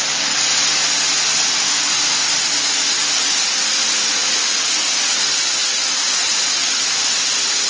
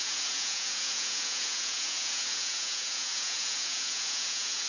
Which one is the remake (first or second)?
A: second